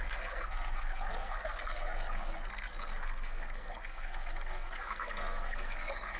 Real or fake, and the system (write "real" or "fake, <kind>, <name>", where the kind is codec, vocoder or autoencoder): fake, codec, SNAC